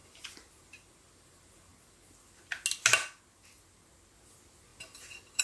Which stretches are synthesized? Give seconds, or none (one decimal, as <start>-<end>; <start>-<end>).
0.0-1.7; 4.2-5.4